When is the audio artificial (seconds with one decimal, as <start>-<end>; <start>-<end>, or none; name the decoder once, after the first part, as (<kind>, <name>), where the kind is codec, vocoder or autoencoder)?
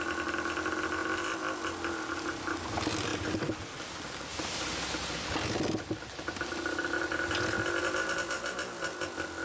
none